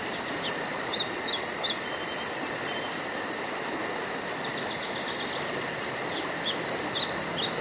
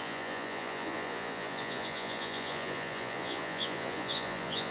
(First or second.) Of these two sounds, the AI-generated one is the second